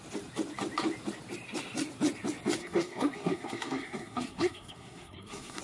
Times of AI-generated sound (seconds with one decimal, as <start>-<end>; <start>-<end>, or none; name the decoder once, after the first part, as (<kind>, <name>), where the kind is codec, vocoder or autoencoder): 2.6-5.6 (codec, SNAC)